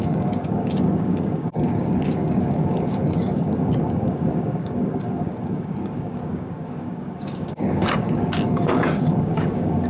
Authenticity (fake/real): fake